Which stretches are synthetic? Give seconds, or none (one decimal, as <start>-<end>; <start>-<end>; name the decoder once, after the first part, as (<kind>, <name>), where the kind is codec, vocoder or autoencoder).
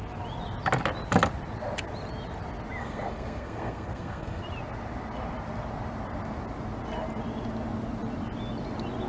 2.8-4.4 (codec, SNAC)